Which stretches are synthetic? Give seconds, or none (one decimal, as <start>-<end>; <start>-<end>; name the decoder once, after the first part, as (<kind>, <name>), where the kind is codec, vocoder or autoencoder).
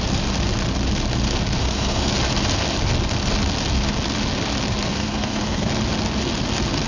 1.6-2.1 (codec, SNAC); 4.9-5.7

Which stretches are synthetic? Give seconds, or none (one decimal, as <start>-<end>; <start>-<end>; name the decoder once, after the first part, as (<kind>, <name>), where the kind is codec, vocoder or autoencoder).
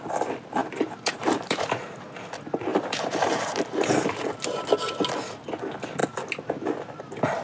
0.6-2.0 (vocoder, BigVGAN v2); 2.7-3.9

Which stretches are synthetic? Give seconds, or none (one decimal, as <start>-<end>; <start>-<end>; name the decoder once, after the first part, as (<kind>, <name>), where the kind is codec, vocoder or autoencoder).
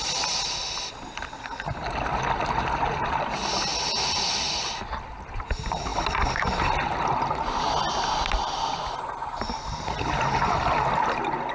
none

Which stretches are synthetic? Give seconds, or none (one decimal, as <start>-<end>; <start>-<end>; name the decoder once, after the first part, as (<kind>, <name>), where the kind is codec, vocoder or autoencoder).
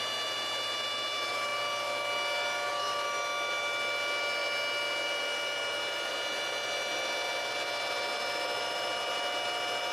none